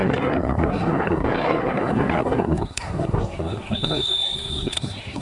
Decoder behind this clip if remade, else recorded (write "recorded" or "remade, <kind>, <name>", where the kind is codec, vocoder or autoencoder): remade, codec, SNAC